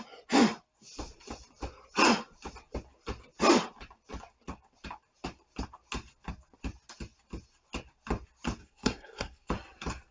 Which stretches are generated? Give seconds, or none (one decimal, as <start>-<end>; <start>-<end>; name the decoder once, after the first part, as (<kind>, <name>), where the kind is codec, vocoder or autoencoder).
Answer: 8.6-9.5 (codec, SNAC)